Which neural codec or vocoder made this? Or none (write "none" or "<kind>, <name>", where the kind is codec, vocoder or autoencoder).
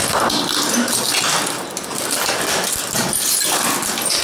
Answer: none